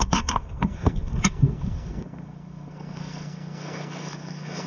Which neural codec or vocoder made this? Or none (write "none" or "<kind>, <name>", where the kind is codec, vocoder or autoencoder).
codec, SNAC